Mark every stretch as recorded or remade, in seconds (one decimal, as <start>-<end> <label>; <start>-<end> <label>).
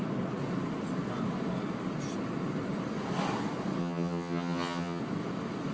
0.0-3.8 recorded; 3.8-5.0 remade; 5.0-5.7 recorded